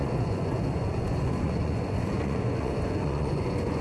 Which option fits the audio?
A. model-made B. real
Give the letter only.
A